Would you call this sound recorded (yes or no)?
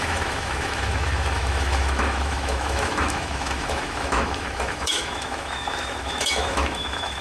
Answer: no